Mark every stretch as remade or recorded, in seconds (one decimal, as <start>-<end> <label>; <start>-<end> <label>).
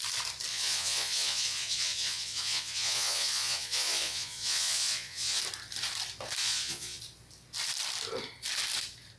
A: 0.0-0.5 recorded; 0.5-5.4 remade; 5.4-6.4 recorded; 6.4-7.0 remade; 7.0-9.2 recorded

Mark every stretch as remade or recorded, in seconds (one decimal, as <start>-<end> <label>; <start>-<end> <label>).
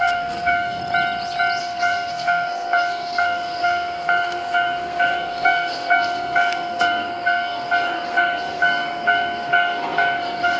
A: 0.0-0.8 remade; 0.8-1.6 recorded; 1.6-10.6 remade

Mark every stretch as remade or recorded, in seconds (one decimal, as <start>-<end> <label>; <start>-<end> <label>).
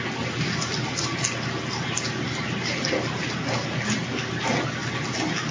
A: 0.0-5.5 recorded